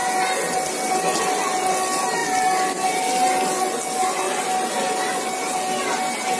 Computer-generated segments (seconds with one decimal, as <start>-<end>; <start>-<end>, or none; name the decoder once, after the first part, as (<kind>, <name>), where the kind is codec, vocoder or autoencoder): none